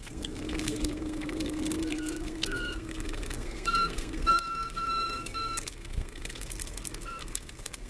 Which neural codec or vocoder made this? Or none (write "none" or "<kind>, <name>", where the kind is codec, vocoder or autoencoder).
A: codec, SNAC